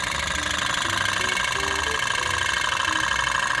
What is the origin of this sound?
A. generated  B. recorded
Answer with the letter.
B